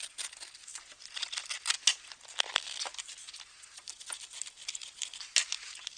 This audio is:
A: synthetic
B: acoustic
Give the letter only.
B